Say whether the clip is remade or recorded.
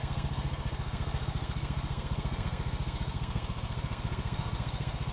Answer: remade